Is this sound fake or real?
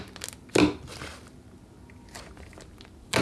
real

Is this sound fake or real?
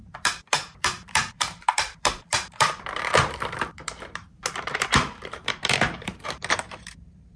fake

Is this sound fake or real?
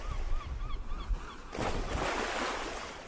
real